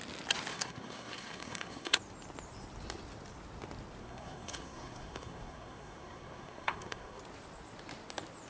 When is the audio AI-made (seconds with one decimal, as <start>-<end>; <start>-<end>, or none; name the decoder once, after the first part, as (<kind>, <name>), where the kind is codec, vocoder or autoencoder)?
0.5-2.0 (codec, SNAC); 4.0-7.2